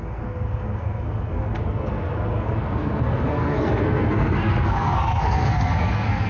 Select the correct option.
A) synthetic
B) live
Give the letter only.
A